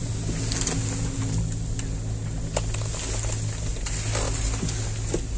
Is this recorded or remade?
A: recorded